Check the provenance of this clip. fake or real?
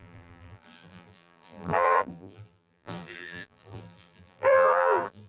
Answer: fake